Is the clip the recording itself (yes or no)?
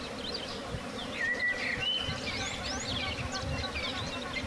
yes